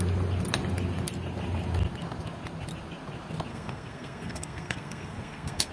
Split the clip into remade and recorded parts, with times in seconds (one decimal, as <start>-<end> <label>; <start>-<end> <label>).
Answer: 0.0-3.5 recorded; 3.5-5.7 remade